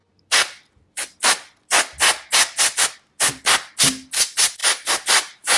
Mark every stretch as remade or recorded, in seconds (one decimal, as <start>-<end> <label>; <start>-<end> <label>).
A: 0.0-5.6 recorded